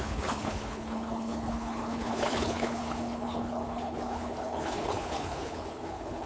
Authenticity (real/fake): fake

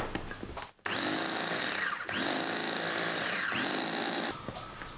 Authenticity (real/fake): real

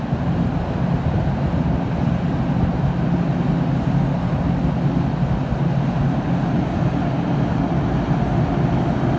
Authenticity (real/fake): real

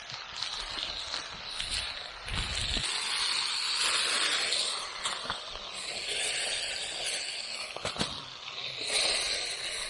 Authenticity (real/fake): real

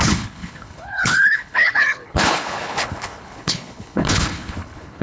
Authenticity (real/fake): fake